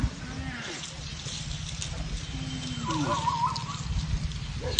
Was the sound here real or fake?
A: real